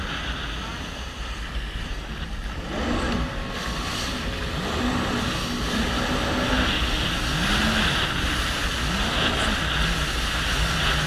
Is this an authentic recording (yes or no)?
yes